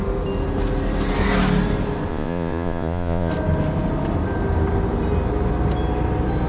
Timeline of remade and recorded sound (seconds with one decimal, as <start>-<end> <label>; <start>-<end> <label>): 0.0-2.1 recorded; 2.1-3.3 remade; 3.3-6.5 recorded